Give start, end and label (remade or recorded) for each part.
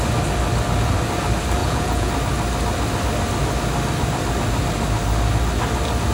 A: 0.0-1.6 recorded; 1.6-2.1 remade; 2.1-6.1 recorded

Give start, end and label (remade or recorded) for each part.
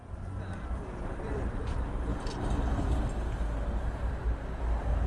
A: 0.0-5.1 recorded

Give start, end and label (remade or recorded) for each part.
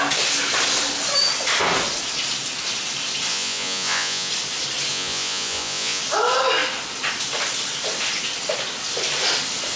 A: 0.0-3.3 recorded; 3.3-4.3 remade; 4.3-4.9 recorded; 4.9-6.0 remade; 6.0-9.8 recorded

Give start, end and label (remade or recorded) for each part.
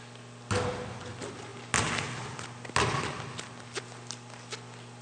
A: 0.0-5.0 recorded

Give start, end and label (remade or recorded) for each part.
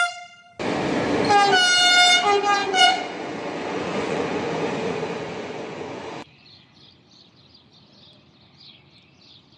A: 0.0-2.6 recorded; 2.6-6.9 remade; 6.9-9.6 recorded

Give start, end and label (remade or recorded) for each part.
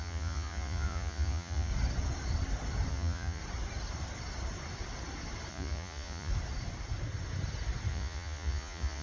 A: 0.0-1.7 remade; 1.7-2.9 recorded; 2.9-3.4 remade; 3.4-5.5 recorded; 5.5-6.3 remade; 6.3-7.9 recorded; 7.9-9.0 remade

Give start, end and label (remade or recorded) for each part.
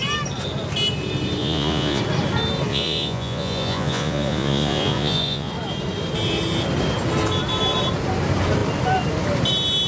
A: 0.0-1.4 recorded; 1.4-2.0 remade; 2.0-2.7 recorded; 2.7-5.5 remade; 5.5-9.9 recorded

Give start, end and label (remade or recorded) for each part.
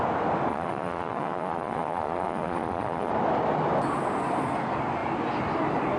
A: 0.0-0.5 recorded; 0.5-3.1 remade; 3.1-6.0 recorded